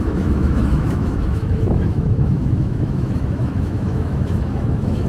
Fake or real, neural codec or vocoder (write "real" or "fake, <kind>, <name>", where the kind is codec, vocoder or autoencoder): fake, autoencoder, DAC-VAE